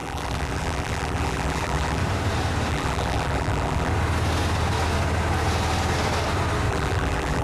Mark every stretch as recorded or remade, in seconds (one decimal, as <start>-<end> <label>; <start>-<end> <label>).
0.0-2.0 remade; 2.0-2.7 recorded; 2.7-3.9 remade; 3.9-6.7 recorded; 6.7-7.4 remade